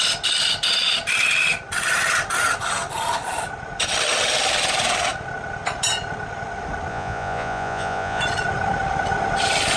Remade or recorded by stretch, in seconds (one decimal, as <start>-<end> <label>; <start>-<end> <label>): 0.0-6.9 recorded; 6.9-8.2 remade; 8.2-9.8 recorded